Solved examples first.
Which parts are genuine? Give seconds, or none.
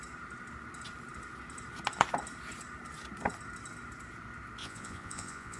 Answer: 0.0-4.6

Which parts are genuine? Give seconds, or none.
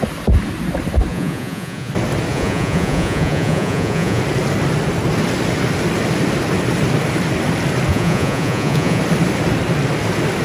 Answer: 0.0-1.1; 1.9-2.3; 4.2-7.9; 9.0-10.4